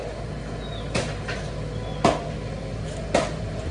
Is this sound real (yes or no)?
yes